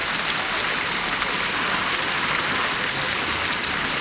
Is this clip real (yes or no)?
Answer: yes